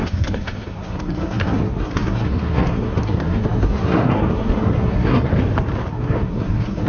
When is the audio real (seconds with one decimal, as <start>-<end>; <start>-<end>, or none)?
5.3-5.9